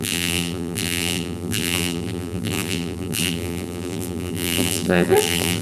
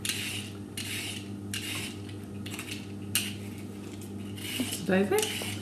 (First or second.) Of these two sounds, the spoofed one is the first